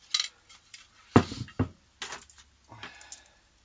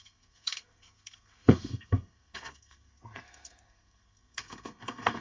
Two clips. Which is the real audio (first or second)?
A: first